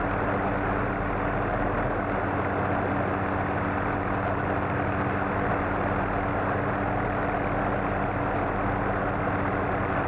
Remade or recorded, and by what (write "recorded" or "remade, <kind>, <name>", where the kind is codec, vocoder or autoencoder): recorded